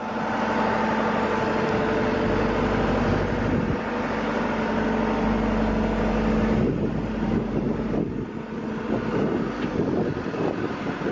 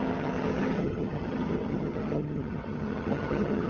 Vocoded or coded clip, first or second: second